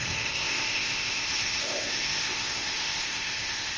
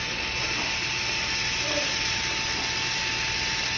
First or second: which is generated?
first